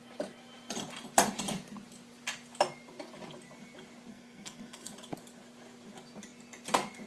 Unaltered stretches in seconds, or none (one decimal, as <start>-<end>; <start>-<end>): 0.0-4.1; 4.9-7.1